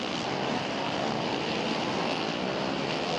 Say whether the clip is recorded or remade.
recorded